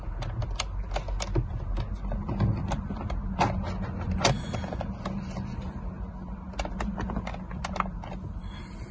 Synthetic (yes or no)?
no